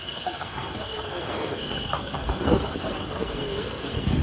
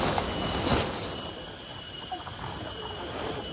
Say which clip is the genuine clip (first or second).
second